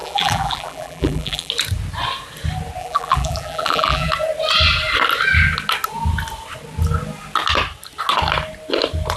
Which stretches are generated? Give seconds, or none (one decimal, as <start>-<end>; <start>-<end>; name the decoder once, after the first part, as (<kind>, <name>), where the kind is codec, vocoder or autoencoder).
0.0-1.5 (vocoder, BigVGAN v2); 2.8-4.1